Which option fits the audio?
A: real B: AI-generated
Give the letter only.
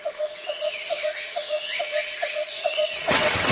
B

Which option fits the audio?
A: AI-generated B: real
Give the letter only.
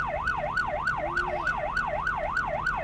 B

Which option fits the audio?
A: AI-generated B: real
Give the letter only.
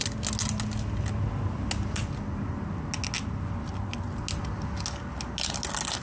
B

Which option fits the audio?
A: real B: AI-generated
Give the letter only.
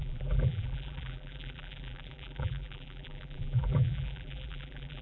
B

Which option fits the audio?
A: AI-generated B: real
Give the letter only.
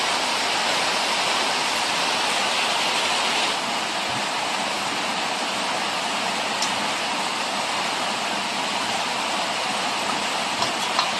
B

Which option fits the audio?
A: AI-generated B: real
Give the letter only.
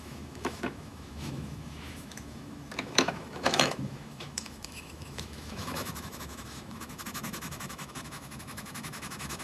A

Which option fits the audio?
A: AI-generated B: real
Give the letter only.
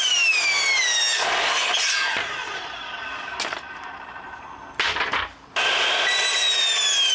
B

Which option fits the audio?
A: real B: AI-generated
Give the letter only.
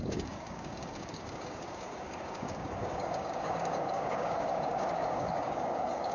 B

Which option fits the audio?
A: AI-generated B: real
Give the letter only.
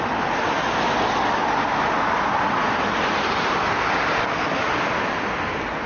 B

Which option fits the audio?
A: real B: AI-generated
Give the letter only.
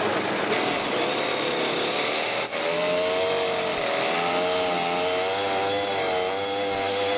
A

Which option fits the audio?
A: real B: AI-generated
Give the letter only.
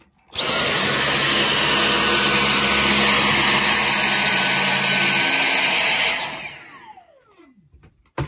A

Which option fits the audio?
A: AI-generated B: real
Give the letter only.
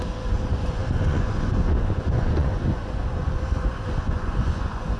A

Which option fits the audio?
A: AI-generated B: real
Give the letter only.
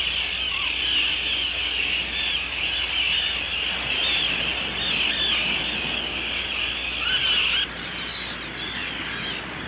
B